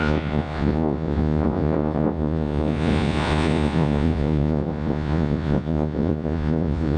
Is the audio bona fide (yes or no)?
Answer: no